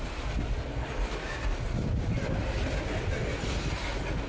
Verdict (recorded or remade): recorded